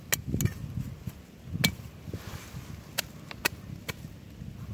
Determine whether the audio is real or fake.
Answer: real